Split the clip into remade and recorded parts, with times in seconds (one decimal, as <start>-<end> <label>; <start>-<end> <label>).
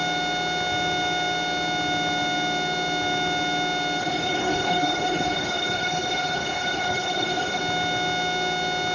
0.0-4.0 recorded; 4.0-7.6 remade; 7.6-8.9 recorded